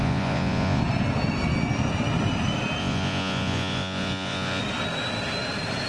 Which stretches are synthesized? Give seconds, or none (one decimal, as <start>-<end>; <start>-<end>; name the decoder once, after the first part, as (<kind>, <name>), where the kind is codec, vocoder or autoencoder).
0.0-0.8 (vocoder, Vocos); 2.8-4.6